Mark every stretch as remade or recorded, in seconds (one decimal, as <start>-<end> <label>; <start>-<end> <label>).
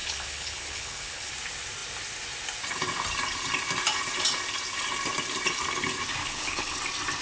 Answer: 0.0-1.3 remade; 1.3-6.2 recorded; 6.2-6.8 remade; 6.8-7.2 recorded